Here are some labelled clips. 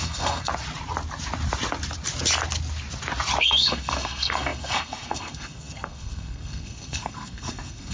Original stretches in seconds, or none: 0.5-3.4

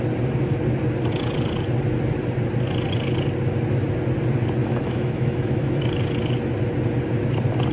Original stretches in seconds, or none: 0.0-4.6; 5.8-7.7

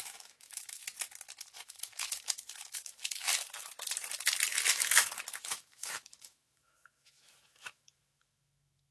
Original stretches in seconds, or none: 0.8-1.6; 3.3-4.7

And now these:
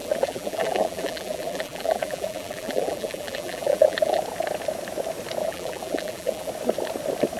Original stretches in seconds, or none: 4.2-5.4; 6.5-7.4